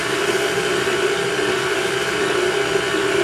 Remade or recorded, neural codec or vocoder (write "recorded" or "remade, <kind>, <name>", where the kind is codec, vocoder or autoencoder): remade, vocoder, BigVGAN v2